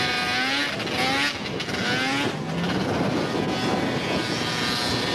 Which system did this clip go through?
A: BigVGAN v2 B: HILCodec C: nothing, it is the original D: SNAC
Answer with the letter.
C